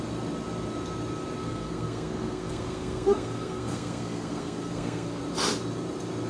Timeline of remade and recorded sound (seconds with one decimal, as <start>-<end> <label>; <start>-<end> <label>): 0.0-1.4 recorded; 1.4-5.2 remade; 5.2-6.3 recorded